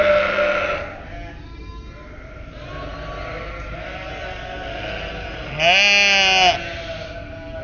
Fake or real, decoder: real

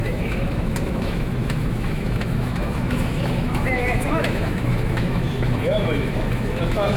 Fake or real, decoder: fake, autoencoder, DAC-VAE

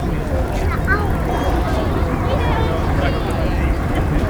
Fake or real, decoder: real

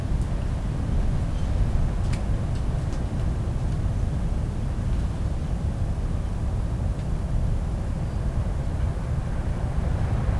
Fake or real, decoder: real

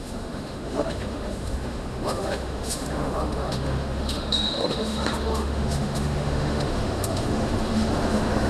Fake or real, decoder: fake, autoencoder, DAC-VAE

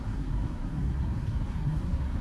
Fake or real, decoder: fake, codec, SNAC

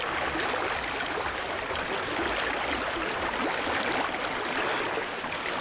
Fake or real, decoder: real